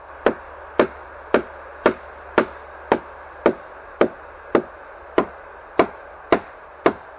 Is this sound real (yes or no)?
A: yes